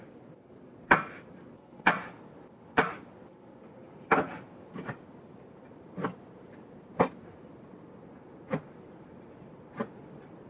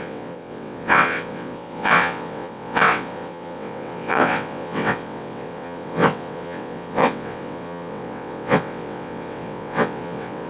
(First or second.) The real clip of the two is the first